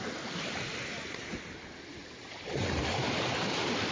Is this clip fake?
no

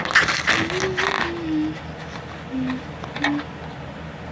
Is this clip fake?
no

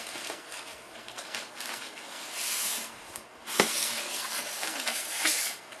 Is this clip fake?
yes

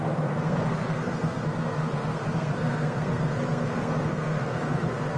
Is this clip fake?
yes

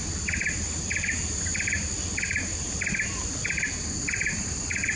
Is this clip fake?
no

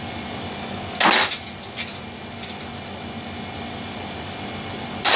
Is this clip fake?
no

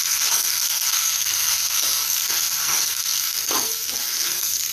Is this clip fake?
yes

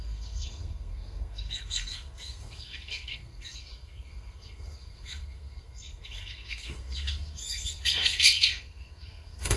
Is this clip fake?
yes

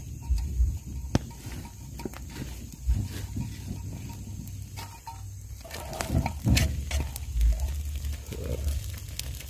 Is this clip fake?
no